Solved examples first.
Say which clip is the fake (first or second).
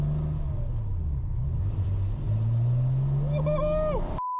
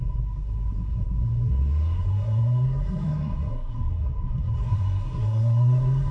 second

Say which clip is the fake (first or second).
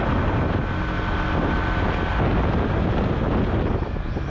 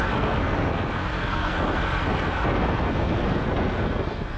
second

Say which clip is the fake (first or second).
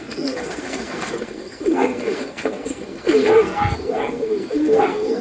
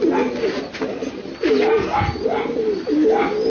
first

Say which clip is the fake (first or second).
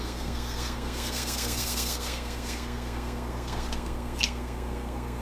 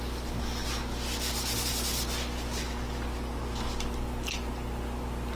first